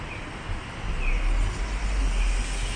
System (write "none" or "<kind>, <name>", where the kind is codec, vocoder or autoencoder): none